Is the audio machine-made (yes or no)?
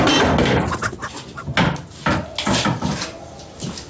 no